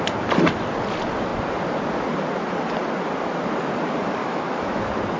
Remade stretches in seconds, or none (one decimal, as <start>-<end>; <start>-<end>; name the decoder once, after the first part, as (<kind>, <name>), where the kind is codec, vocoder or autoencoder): 4.2-4.8 (autoencoder, DAC-VAE)